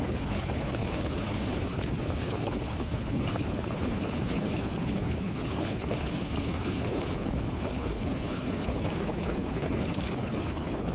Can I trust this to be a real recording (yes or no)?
no